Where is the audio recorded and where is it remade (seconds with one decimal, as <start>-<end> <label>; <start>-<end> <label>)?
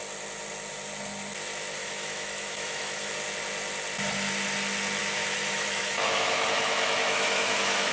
0.0-1.8 recorded; 1.8-3.1 remade; 3.1-5.0 recorded; 5.0-7.9 remade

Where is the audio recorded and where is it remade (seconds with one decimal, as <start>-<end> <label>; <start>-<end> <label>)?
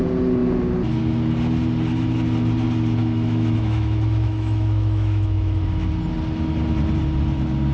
0.0-3.0 recorded; 3.0-5.9 remade; 5.9-7.7 recorded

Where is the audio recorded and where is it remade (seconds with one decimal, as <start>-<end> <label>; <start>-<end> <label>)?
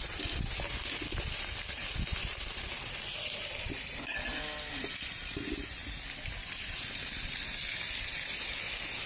0.0-9.1 recorded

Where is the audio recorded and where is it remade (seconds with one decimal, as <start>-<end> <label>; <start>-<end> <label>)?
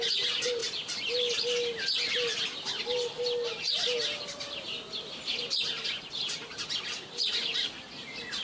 0.0-8.4 recorded